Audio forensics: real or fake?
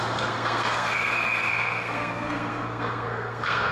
fake